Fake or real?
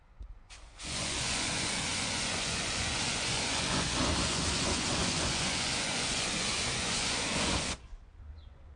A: fake